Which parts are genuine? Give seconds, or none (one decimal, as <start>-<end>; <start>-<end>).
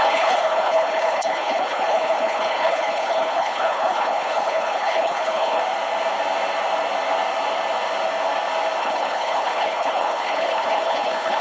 5.6-8.8